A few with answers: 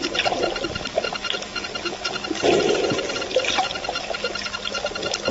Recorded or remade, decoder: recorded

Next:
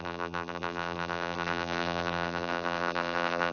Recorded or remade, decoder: remade, vocoder, BigVGAN v2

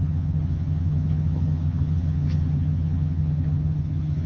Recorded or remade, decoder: remade, vocoder, HiFi-GAN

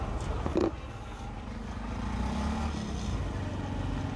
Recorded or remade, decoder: recorded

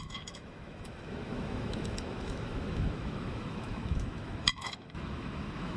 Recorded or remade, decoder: remade, autoencoder, DAC-VAE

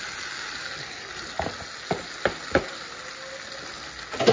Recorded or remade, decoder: recorded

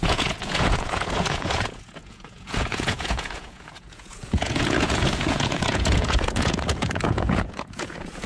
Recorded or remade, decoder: remade, vocoder, Vocos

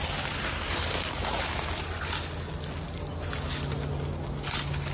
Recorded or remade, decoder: recorded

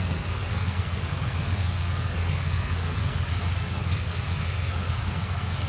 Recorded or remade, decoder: remade, codec, SNAC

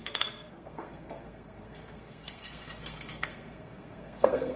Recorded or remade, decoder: remade, codec, SNAC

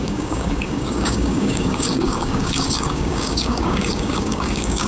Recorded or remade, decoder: remade, codec, DAC